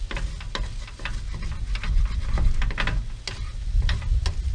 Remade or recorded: recorded